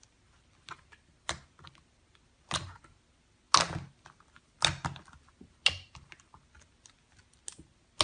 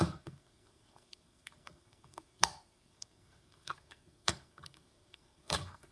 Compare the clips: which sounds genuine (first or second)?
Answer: first